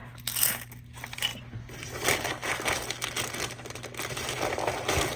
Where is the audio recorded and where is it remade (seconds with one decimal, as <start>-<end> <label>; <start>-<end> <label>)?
0.0-5.2 recorded